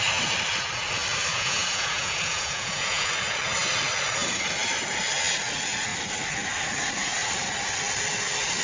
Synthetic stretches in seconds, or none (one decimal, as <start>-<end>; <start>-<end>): 1.3-3.1